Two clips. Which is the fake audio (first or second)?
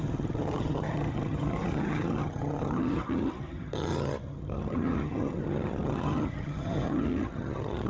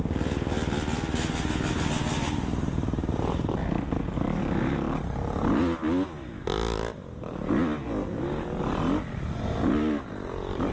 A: first